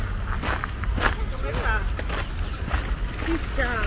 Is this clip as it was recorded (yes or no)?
yes